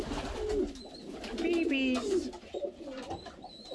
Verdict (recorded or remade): recorded